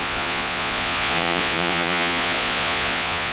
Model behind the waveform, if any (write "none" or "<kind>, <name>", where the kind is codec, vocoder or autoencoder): vocoder, Vocos